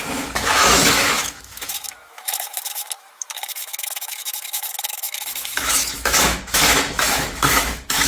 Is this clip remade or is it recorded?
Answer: remade